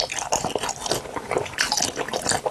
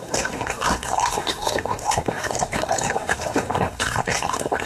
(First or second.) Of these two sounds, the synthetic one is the second